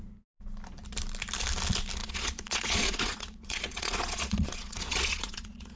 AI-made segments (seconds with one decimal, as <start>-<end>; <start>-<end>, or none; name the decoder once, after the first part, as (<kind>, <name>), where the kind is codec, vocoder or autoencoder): 2.0-5.8 (vocoder, Vocos)